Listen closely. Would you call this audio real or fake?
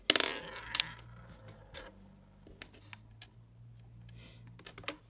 real